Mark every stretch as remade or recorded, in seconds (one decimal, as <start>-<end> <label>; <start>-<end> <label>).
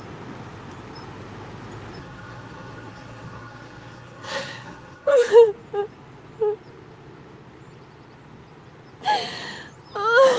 0.0-2.0 recorded; 2.0-5.3 remade; 5.3-10.4 recorded